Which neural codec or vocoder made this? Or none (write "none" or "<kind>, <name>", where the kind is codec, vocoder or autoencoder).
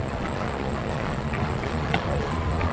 vocoder, Vocos